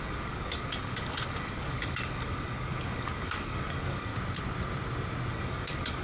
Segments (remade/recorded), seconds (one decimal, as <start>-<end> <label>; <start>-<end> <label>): 0.0-4.1 remade; 4.1-5.3 recorded; 5.3-6.0 remade